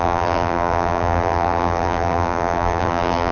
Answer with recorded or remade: remade